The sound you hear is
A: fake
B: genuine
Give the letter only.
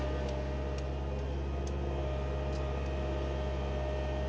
B